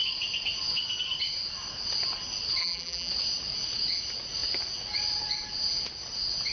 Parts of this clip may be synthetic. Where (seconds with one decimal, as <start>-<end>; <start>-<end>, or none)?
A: 2.6-3.1